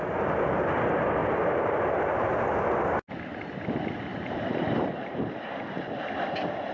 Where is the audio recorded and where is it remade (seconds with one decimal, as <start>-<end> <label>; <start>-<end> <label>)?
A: 0.0-1.2 recorded; 1.2-2.4 remade; 2.4-4.1 recorded; 4.1-5.3 remade; 5.3-6.7 recorded